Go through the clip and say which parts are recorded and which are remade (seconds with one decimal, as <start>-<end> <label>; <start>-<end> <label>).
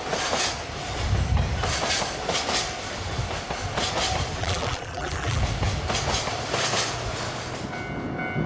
0.0-4.4 recorded; 4.4-5.4 remade; 5.4-8.5 recorded